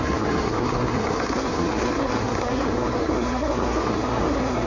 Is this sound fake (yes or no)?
yes